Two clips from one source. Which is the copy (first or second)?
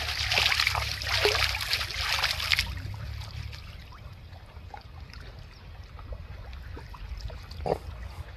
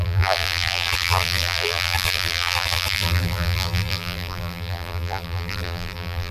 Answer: second